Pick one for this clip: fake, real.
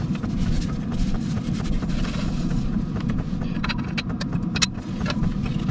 real